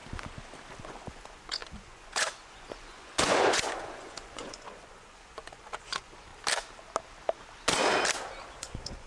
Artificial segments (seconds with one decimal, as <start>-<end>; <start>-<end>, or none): 0.8-6.3; 8.5-9.1